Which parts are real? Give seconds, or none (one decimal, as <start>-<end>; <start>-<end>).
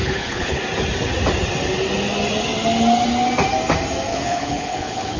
0.6-4.1